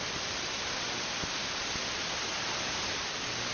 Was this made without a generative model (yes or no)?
yes